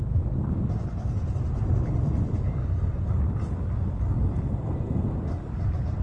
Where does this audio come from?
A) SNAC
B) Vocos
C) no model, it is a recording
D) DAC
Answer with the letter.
C